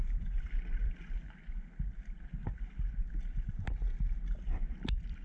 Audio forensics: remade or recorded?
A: recorded